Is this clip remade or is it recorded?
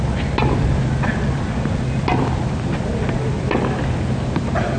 recorded